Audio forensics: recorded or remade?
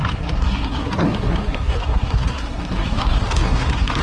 remade